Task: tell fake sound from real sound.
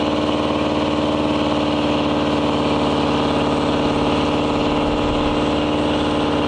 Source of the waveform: real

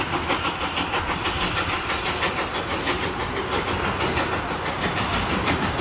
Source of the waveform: real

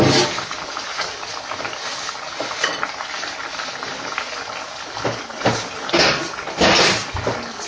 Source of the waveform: real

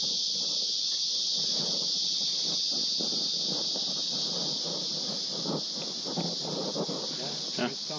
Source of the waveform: real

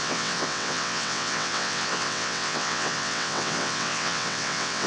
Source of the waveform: fake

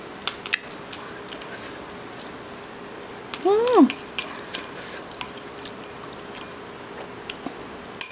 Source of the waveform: real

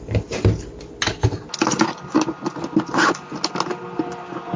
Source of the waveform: real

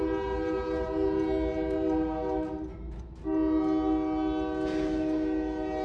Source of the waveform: real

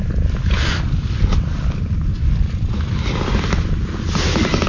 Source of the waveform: real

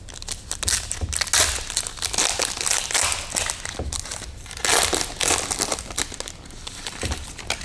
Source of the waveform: real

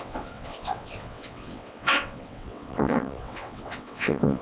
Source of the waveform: fake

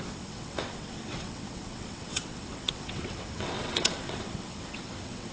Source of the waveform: fake